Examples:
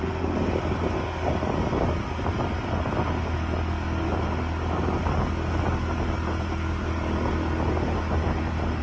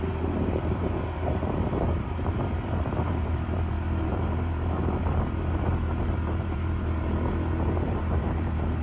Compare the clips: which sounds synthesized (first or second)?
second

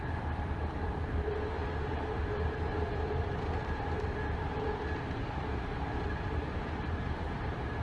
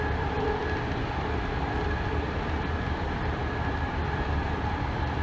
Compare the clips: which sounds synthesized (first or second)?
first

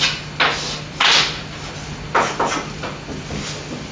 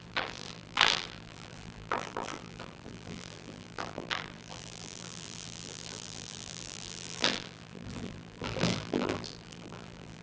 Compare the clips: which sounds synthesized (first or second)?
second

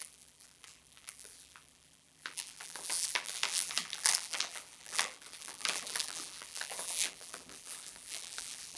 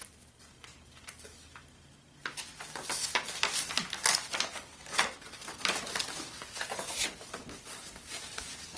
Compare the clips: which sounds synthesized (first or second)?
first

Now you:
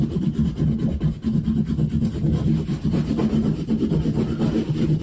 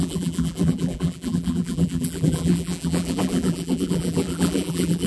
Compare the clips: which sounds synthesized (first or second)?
second